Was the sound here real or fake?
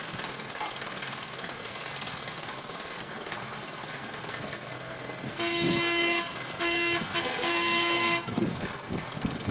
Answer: fake